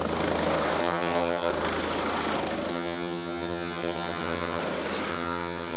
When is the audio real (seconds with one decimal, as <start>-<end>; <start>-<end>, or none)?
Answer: 0.0-0.8; 1.5-2.7; 4.6-5.1

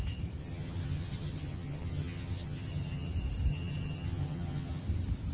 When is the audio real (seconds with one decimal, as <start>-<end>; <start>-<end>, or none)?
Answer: 0.0-0.4; 3.1-3.5; 4.8-5.3

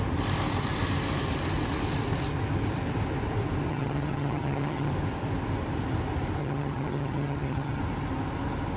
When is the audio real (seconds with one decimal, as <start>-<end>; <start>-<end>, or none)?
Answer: 0.0-3.7; 4.9-6.4; 7.8-8.8

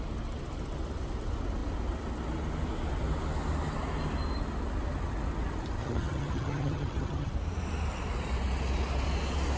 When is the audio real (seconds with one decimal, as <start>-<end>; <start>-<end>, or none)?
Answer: 0.0-5.8; 7.3-9.6